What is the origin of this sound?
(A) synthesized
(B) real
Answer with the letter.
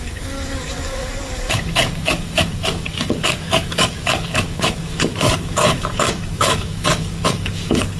A